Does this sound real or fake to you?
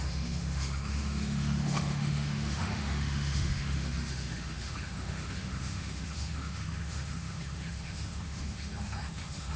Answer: fake